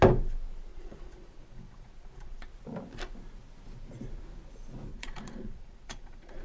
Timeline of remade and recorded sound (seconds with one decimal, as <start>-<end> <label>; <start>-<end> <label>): 0.0-0.7 recorded; 0.7-2.5 remade; 2.5-4.9 recorded; 4.9-6.4 remade